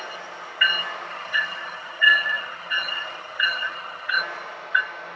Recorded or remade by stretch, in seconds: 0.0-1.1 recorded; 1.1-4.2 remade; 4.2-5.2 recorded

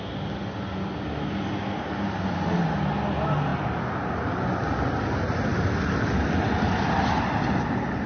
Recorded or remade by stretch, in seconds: 0.0-8.1 recorded

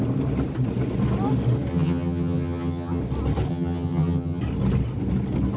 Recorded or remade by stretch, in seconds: 0.0-1.7 recorded; 1.7-3.0 remade; 3.0-3.5 recorded; 3.5-4.4 remade; 4.4-5.6 recorded